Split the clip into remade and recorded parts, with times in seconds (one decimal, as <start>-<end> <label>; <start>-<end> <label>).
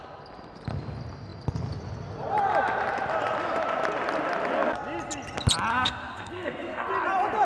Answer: 0.0-5.7 recorded; 5.7-6.9 remade; 6.9-7.4 recorded